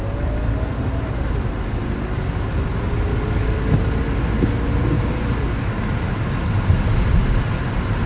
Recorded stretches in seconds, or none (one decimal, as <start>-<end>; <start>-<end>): 0.0-3.1; 3.8-8.1